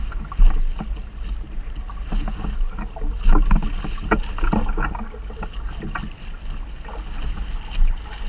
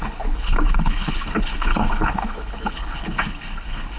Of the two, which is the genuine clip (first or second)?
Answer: first